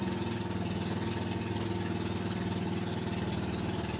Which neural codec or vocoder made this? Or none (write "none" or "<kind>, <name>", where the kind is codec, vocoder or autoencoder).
none